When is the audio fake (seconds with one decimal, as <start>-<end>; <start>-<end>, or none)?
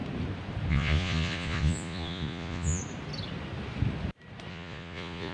0.7-2.8; 4.5-5.3